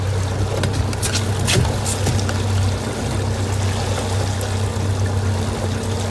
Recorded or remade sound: recorded